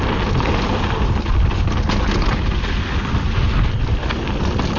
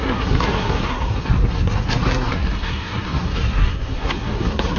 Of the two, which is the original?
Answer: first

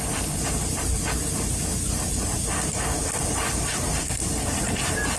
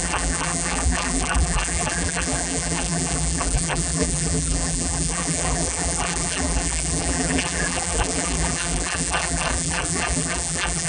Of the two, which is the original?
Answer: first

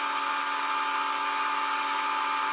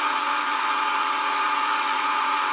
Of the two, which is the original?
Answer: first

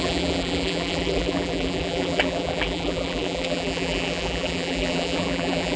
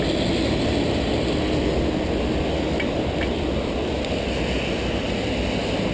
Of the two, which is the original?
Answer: second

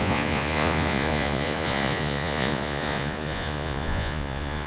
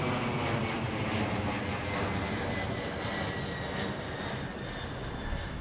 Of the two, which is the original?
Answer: second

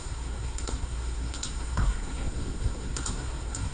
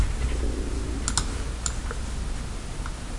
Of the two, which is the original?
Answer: second